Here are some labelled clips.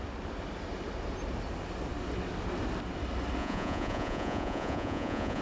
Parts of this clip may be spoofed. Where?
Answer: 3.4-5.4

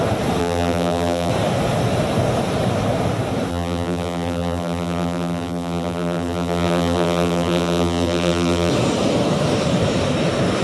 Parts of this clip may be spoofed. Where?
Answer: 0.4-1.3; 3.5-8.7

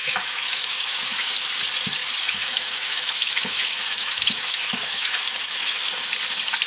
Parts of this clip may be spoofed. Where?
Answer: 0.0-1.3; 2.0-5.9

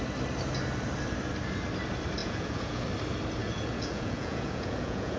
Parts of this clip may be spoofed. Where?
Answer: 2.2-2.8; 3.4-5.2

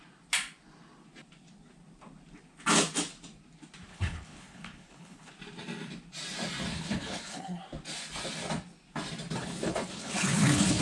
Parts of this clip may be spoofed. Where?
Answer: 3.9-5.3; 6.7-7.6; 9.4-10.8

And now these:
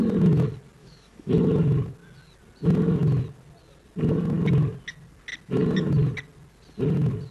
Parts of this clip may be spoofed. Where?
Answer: 0.8-1.4